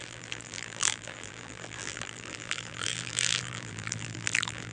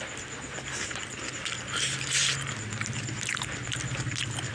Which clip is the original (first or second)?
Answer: second